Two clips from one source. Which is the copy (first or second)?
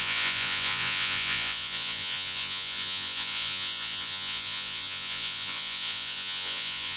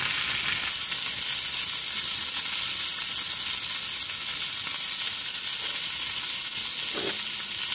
first